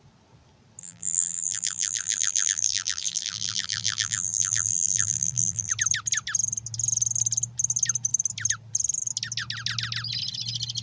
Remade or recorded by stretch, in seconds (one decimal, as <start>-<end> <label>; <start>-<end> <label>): 0.0-0.8 recorded; 0.8-5.7 remade; 5.7-10.8 recorded